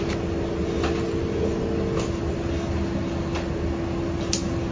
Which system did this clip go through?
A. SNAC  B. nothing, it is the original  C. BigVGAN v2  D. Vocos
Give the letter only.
B